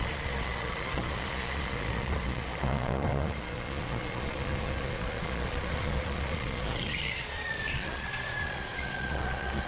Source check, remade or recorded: remade